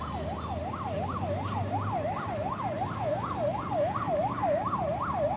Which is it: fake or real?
real